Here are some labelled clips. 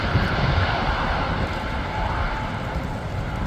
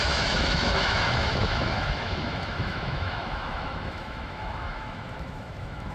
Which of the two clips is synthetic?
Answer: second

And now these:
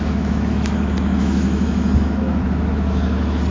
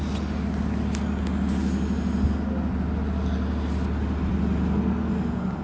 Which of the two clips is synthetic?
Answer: first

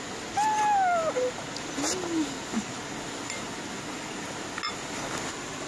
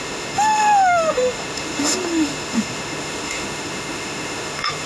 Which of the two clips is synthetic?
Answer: second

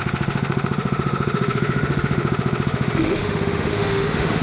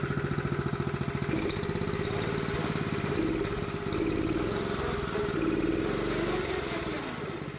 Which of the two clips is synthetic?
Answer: first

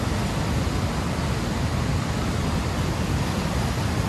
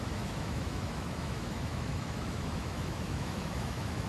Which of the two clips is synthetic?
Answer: second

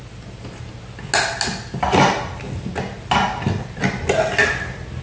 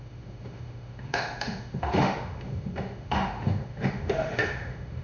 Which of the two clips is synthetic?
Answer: second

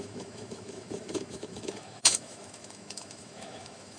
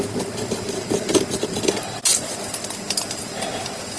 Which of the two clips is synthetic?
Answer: first